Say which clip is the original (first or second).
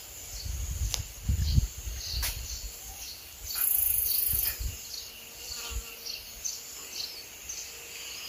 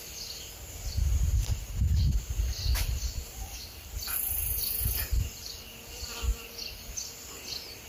first